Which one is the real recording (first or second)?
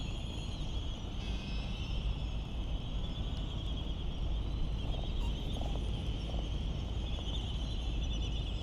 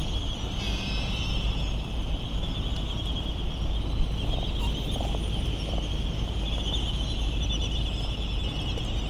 second